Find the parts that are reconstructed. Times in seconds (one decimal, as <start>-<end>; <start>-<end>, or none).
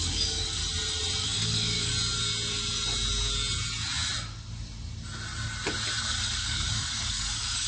0.0-0.6; 1.2-1.9; 6.0-7.7